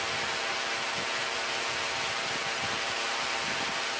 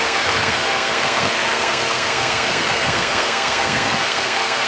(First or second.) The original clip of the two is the first